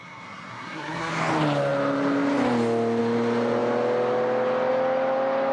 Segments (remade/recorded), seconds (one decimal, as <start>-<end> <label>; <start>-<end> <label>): 0.0-1.1 remade; 1.1-5.5 recorded